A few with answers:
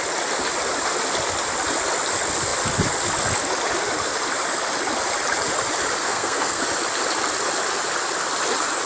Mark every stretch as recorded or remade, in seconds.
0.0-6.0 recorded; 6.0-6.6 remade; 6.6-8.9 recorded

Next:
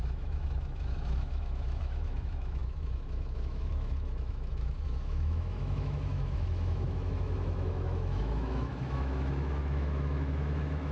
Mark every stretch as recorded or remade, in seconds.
0.0-10.9 remade

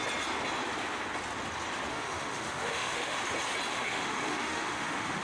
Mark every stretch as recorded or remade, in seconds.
0.0-1.9 recorded; 1.9-3.2 remade; 3.2-3.7 recorded; 3.7-5.2 remade

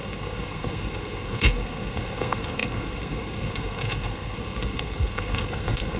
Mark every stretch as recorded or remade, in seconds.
0.0-6.0 remade

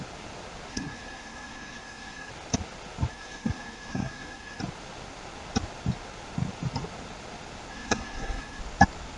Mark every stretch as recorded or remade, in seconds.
0.0-0.7 recorded; 0.7-2.3 remade; 2.3-3.1 recorded; 3.1-4.6 remade; 4.6-7.7 recorded; 7.7-8.6 remade; 8.6-9.2 recorded

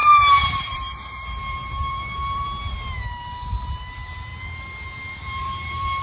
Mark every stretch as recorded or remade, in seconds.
0.0-4.3 remade; 4.3-5.2 recorded; 5.2-6.0 remade